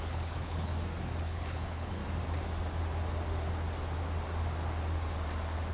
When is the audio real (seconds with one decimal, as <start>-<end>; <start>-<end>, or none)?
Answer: 0.7-1.2; 2.0-5.7